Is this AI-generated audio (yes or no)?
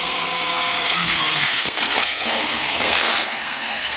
yes